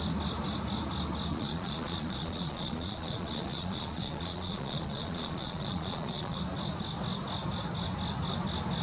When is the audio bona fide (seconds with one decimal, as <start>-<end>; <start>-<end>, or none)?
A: 0.0-1.3; 6.4-8.8